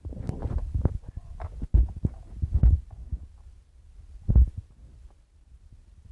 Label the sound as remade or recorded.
recorded